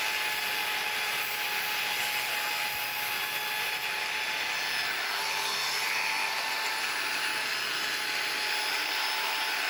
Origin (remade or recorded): recorded